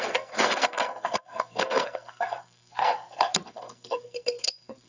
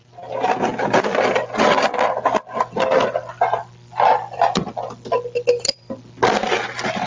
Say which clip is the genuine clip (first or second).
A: second